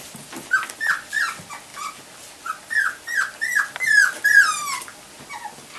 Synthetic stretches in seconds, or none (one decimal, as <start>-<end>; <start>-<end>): none